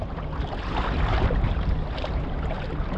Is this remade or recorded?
recorded